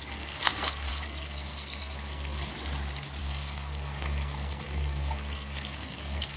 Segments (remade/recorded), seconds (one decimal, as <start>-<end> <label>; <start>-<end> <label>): 0.0-2.5 remade; 2.5-3.2 recorded; 3.2-6.4 remade